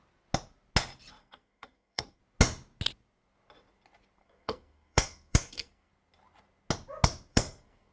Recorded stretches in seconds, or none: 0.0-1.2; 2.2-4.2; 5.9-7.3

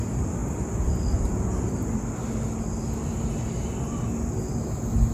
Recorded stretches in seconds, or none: 0.0-5.1

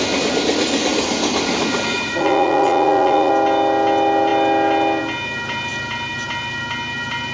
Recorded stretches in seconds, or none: 0.0-1.9; 3.3-7.3

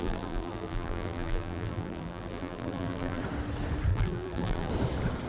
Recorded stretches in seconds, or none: 3.2-3.9; 4.7-5.3

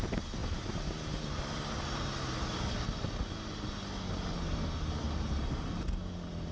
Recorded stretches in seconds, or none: 0.0-0.4; 2.6-6.5

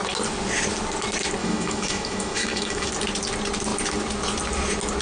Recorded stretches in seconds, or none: 0.0-1.4; 2.9-5.0